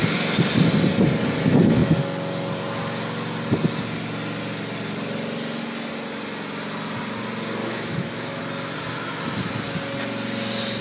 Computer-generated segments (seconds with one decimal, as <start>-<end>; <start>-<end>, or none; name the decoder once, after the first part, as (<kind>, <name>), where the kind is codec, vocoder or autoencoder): 7.6-8.4 (autoencoder, DAC-VAE)